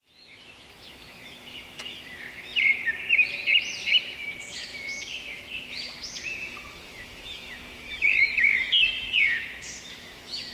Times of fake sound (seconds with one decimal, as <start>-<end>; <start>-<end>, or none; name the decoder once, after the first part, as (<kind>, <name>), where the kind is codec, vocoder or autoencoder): 0.0-2.5 (autoencoder, DAC-VAE); 4.0-10.5